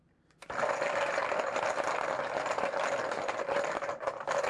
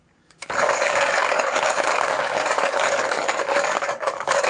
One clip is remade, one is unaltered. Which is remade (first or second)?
second